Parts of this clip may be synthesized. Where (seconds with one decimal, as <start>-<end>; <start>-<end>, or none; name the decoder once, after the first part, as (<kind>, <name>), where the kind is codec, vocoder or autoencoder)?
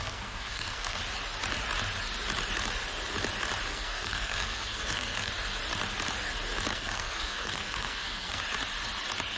0.0-1.0 (codec, SNAC); 3.7-5.3; 6.7-8.4